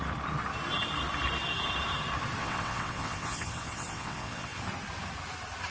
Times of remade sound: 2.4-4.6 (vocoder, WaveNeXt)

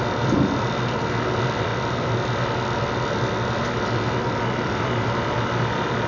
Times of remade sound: none

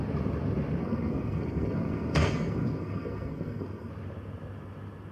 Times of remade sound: 0.8-3.9 (codec, SNAC)

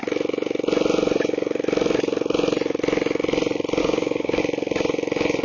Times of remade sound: 3.8-4.4 (codec, DAC)

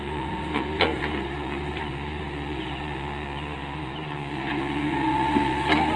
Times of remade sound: 0.0-6.0 (vocoder, Vocos)